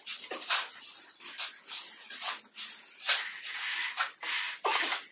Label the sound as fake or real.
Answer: real